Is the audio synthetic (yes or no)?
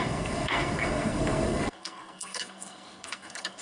yes